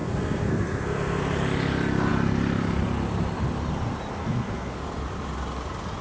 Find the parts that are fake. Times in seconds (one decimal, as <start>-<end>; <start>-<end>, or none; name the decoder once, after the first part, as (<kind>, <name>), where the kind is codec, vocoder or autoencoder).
0.0-1.2 (codec, SNAC); 4.2-4.7